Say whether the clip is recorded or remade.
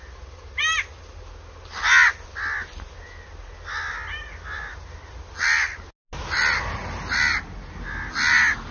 recorded